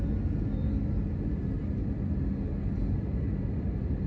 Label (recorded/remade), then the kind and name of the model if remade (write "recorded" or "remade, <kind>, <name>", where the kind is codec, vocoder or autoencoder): recorded